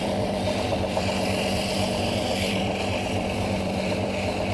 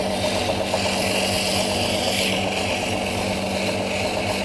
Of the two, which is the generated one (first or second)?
first